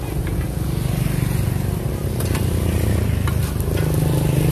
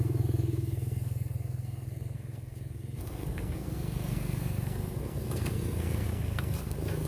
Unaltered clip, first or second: first